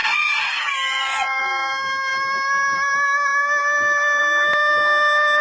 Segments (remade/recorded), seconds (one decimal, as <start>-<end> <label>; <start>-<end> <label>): 0.0-5.4 recorded

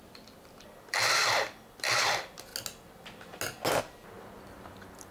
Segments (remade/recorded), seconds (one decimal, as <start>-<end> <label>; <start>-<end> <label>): 0.0-2.5 remade; 2.5-3.8 recorded; 3.8-5.1 remade